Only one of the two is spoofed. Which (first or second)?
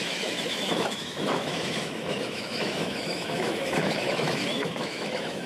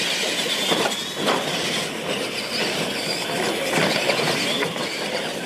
first